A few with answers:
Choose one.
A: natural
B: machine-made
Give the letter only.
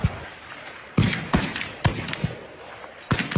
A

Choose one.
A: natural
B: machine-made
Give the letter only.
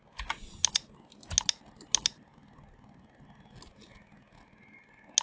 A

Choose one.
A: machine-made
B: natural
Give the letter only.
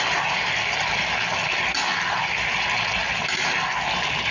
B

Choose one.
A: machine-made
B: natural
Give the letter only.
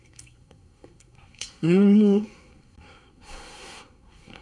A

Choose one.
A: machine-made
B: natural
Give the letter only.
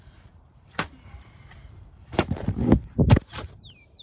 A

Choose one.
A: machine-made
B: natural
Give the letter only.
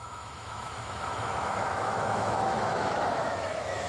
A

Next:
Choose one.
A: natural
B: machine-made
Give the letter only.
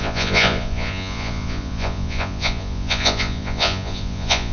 B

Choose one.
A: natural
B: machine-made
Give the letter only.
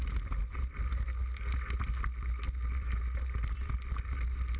A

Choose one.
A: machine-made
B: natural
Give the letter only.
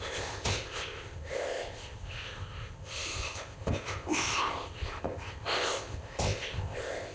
A